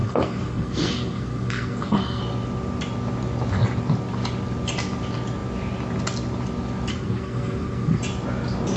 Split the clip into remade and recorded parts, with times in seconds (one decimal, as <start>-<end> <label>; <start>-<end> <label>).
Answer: 0.0-2.2 remade; 2.2-6.9 recorded; 6.9-8.0 remade; 8.0-8.8 recorded